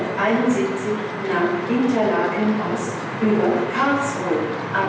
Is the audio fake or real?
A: real